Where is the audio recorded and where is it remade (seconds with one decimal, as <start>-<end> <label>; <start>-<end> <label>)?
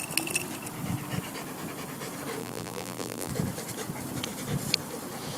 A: 0.0-2.4 recorded; 2.4-3.3 remade; 3.3-5.4 recorded